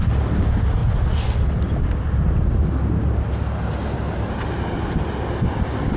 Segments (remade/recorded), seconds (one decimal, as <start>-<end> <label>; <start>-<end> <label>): 0.0-6.0 recorded